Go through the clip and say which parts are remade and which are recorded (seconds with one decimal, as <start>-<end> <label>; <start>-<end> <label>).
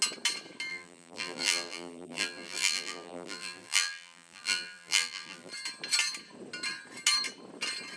0.0-0.7 recorded; 0.7-5.5 remade; 5.5-8.0 recorded